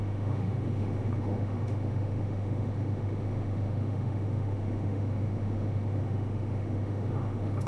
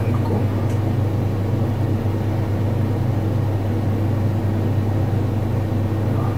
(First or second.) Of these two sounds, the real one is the second